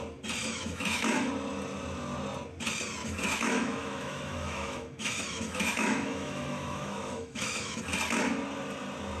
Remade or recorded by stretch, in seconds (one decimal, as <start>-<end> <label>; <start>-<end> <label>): 0.0-0.4 recorded; 0.4-1.3 remade; 1.3-3.0 recorded; 3.0-7.8 remade; 7.8-9.2 recorded